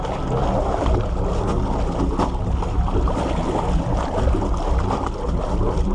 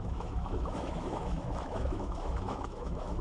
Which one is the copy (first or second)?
second